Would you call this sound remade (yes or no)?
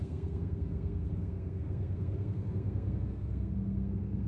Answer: yes